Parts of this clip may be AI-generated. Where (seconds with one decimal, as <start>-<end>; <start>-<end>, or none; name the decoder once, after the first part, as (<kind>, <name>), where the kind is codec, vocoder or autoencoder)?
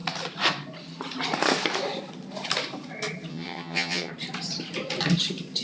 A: 3.3-4.1 (vocoder, HiFi-GAN)